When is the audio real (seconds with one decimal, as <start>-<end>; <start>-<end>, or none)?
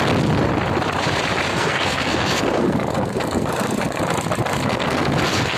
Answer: 0.0-1.5; 4.0-4.6